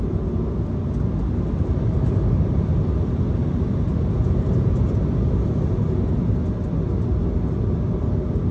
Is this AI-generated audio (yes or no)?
no